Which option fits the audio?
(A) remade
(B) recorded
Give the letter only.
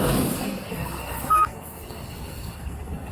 A